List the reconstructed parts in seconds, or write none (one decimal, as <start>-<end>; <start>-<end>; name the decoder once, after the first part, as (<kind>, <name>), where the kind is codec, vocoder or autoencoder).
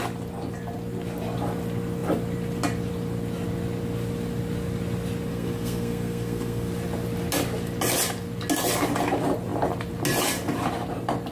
5.3-6.7 (codec, SNAC)